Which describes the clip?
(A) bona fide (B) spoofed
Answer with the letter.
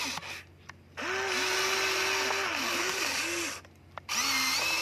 A